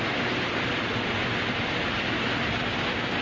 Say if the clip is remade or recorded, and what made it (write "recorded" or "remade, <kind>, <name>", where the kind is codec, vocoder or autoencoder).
recorded